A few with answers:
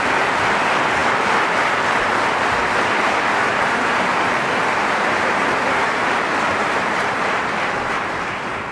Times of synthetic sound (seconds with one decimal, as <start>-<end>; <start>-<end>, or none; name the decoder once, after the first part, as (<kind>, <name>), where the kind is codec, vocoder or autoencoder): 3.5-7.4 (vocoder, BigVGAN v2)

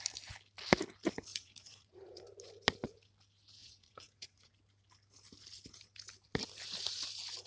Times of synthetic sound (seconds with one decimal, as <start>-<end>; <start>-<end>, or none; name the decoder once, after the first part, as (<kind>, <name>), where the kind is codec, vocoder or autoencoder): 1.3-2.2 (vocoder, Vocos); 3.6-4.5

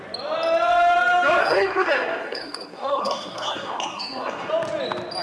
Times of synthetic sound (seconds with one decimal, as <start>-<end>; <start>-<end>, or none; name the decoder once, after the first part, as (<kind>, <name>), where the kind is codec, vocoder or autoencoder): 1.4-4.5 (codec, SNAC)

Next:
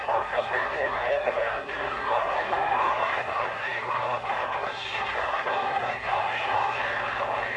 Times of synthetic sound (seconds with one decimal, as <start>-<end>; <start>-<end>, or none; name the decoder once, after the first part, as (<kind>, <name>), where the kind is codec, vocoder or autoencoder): 0.0-6.8 (codec, SNAC)

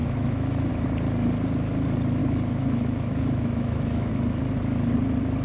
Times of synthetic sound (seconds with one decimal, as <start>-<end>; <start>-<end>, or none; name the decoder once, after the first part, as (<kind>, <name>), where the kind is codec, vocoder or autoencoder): 0.0-0.7 (autoencoder, DAC-VAE); 2.2-4.1

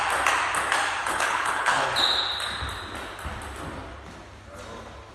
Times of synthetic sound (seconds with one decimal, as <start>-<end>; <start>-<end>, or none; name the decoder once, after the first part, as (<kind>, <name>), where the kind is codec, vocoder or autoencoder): 1.0-1.9 (codec, HILCodec)